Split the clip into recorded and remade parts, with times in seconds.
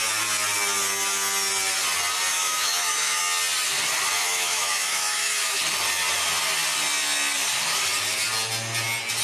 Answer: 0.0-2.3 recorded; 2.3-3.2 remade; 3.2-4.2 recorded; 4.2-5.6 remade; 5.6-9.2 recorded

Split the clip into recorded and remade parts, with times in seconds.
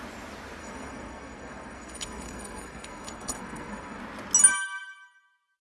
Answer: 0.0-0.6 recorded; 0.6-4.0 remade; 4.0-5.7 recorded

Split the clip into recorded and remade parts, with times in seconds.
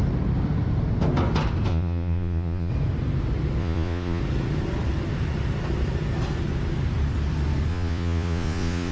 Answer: 0.0-1.7 recorded; 1.7-2.7 remade; 2.7-3.6 recorded; 3.6-4.2 remade; 4.2-7.7 recorded; 7.7-8.9 remade